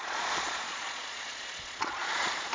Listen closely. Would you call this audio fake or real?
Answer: fake